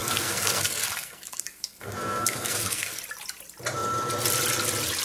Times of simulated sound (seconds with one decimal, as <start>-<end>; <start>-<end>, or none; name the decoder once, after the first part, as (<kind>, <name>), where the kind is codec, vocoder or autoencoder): 0.0-3.0 (codec, SNAC)